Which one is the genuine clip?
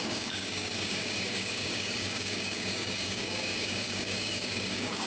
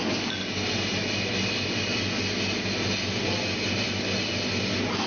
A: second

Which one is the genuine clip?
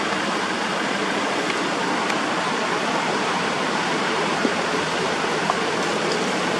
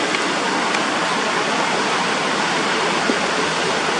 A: second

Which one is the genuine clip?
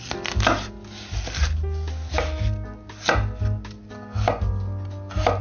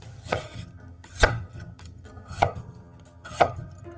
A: first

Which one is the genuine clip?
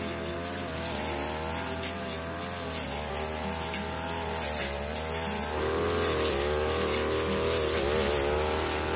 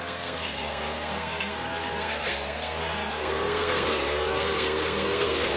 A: first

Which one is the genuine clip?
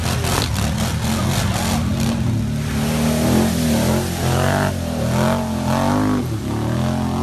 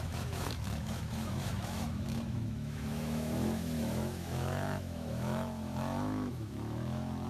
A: first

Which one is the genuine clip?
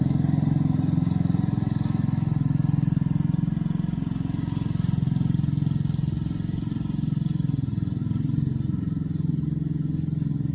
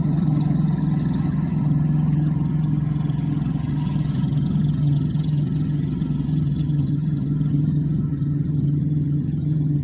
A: first